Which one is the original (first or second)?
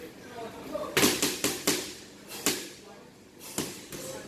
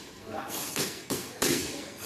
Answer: first